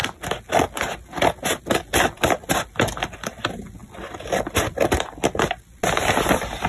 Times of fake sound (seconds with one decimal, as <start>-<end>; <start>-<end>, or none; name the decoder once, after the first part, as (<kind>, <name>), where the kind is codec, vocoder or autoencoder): none

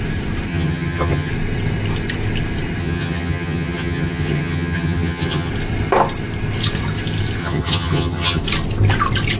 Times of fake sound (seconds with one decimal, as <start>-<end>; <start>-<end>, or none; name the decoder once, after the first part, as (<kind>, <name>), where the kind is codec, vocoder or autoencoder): 0.5-1.3 (vocoder, HiFi-GAN); 2.8-5.5; 7.4-8.4

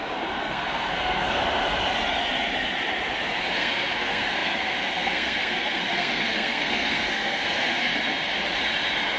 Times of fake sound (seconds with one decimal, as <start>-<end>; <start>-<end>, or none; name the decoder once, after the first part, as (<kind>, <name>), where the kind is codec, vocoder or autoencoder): 0.0-1.4 (codec, SNAC); 3.5-7.9

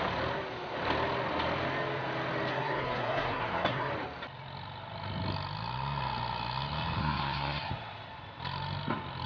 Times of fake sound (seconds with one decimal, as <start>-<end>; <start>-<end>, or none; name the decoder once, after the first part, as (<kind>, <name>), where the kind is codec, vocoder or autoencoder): 2.5-3.9 (codec, SNAC); 7.0-7.7

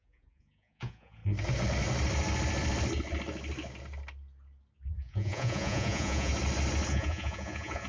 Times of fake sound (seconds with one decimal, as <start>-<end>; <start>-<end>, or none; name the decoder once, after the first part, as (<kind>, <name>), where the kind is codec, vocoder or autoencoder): 0.0-1.2 (vocoder, Vocos); 4.9-6.3; 6.9-7.9

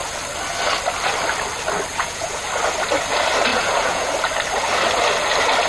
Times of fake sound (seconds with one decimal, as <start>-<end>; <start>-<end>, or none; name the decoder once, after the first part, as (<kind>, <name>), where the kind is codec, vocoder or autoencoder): 1.9-2.5 (vocoder, Vocos); 3.5-4.1

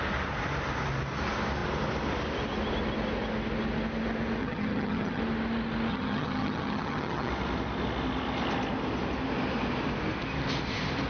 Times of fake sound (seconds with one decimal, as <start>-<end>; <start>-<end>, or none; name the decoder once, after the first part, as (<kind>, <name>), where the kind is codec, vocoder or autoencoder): 4.4-5.2 (vocoder, HiFi-GAN); 5.9-7.3